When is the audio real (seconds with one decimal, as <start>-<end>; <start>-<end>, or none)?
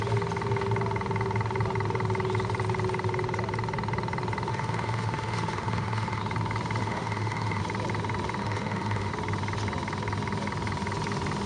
0.0-4.5; 6.2-6.8; 7.6-8.4; 9.1-11.5